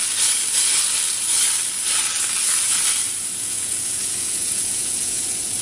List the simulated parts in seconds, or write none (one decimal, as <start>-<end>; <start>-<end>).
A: 3.4-5.6

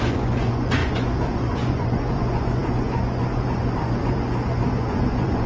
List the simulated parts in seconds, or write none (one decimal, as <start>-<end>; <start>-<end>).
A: 0.0-5.5

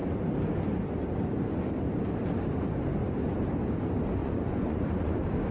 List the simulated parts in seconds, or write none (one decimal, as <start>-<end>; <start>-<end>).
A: 4.2-5.1

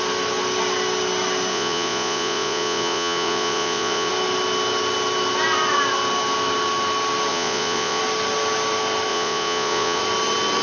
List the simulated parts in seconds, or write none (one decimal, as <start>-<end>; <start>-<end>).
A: 1.5-4.1; 7.3-8.0; 9.1-10.0